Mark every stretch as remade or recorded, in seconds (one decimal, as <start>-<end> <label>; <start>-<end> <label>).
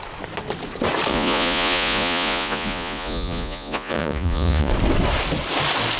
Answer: 0.0-1.1 recorded; 1.1-4.7 remade; 4.7-6.0 recorded